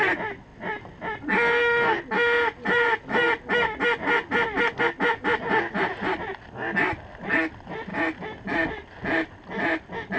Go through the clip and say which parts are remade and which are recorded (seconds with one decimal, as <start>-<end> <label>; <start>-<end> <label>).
0.0-10.2 recorded